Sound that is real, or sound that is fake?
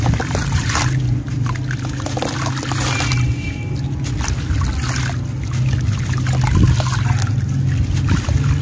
real